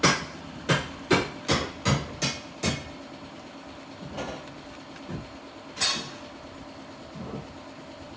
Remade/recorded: recorded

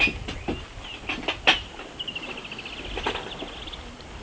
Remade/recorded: recorded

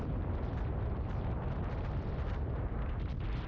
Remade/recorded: recorded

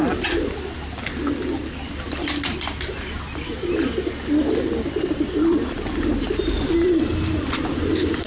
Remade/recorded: recorded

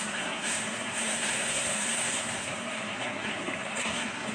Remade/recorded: remade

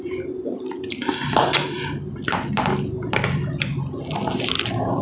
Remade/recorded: recorded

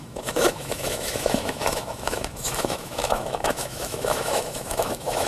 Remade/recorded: remade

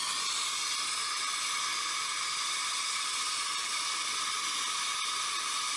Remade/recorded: recorded